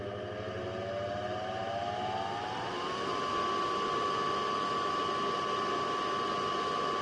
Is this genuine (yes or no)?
yes